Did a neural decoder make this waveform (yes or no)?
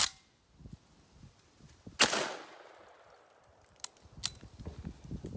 no